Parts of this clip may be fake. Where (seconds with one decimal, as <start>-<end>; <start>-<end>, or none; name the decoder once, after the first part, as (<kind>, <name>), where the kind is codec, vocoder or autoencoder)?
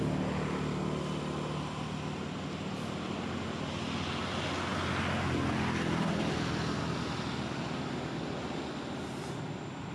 none